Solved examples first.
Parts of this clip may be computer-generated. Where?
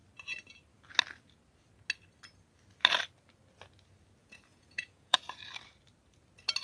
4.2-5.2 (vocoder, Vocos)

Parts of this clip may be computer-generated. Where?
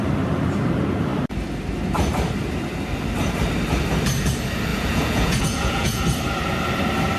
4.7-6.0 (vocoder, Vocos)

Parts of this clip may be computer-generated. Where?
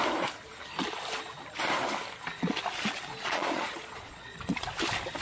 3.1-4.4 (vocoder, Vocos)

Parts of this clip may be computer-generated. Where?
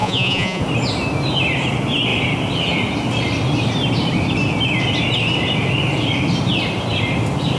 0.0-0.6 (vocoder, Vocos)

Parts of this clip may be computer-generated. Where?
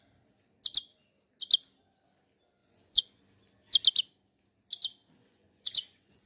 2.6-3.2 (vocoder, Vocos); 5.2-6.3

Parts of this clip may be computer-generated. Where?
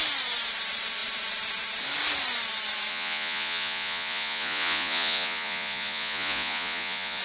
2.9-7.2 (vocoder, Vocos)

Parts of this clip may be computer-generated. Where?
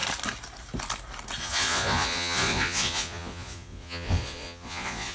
1.4-5.1 (vocoder, Vocos)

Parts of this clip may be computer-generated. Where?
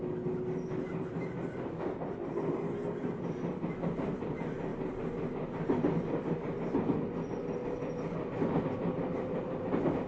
none